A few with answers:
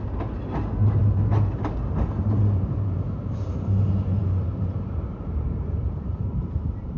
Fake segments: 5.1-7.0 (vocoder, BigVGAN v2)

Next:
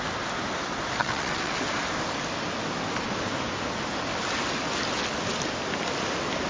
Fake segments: 1.0-1.6 (vocoder, WaveNeXt)